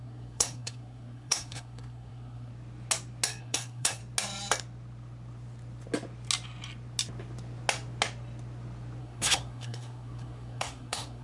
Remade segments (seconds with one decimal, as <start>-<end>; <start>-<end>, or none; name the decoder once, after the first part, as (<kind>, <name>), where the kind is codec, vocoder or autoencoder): 0.0-2.5 (codec, SNAC); 3.4-4.0; 9.0-11.2